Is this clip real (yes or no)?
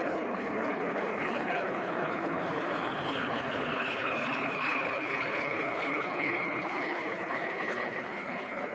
no